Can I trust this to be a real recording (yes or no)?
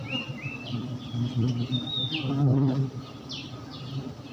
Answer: yes